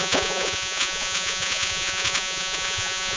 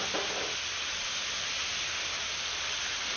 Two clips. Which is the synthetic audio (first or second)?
first